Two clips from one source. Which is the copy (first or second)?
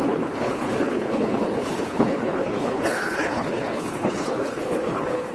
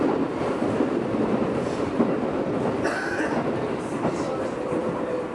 first